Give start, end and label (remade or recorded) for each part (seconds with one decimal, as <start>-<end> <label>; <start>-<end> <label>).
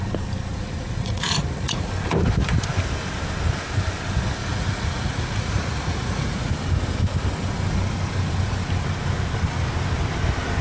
0.0-0.5 recorded; 0.5-1.9 remade; 1.9-4.4 recorded; 4.4-6.5 remade; 6.5-10.6 recorded